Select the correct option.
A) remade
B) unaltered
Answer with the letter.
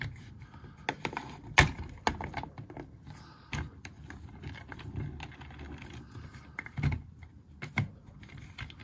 B